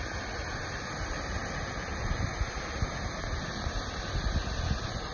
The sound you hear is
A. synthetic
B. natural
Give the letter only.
B